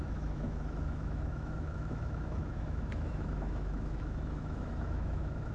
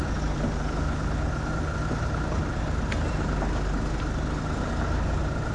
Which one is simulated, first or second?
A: first